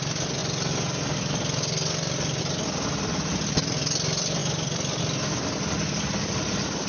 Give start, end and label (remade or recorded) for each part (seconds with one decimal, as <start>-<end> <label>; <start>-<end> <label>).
0.0-6.9 recorded